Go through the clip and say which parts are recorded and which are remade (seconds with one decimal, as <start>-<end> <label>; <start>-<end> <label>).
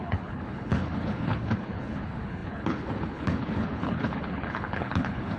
0.0-5.4 remade